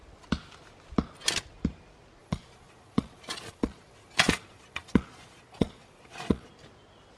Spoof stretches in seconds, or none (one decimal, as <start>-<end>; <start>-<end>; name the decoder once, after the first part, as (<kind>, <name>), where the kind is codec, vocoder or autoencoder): 2.2-6.5 (vocoder, Vocos)